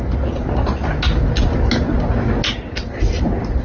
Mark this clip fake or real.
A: real